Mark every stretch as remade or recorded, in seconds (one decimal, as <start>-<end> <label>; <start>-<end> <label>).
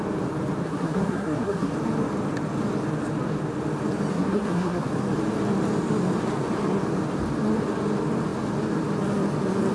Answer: 0.0-0.6 recorded; 0.6-1.7 remade; 1.7-4.1 recorded; 4.1-4.9 remade; 4.9-9.7 recorded